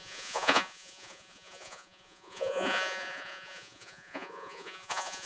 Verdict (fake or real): fake